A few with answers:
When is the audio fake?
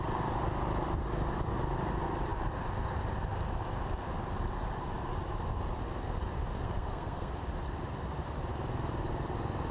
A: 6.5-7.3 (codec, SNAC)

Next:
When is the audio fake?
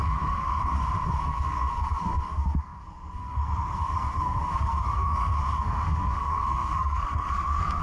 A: 0.0-0.6 (codec, SNAC); 1.2-7.8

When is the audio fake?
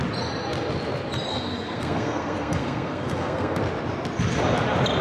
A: 1.3-3.6 (codec, SNAC)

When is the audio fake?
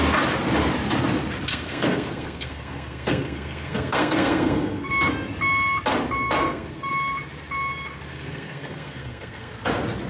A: 1.5-4.9 (codec, SNAC); 6.4-6.9; 8.1-9.5